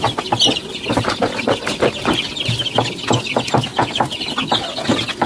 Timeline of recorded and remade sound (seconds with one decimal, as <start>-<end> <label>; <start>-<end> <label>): 0.0-3.7 recorded; 3.7-4.3 remade; 4.3-5.3 recorded